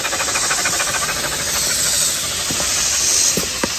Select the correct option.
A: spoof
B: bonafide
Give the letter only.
B